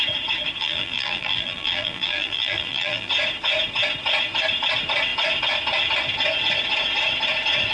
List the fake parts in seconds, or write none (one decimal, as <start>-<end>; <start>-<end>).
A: 0.6-3.1